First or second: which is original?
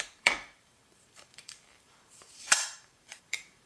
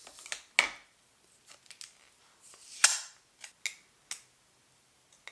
second